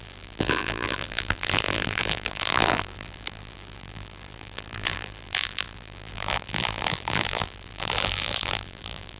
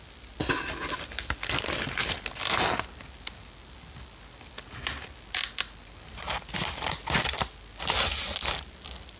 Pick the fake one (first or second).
first